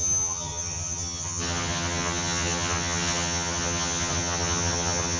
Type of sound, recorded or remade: remade